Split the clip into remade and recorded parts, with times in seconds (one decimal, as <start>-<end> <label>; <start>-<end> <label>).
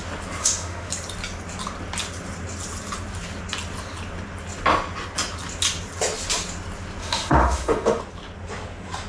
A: 0.0-0.4 recorded; 0.4-0.9 remade; 0.9-7.0 recorded; 7.0-8.0 remade; 8.0-9.1 recorded